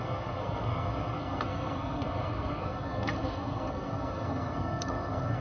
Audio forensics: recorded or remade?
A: remade